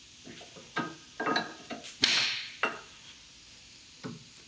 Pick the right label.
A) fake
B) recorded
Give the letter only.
B